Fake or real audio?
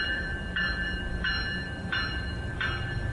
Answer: fake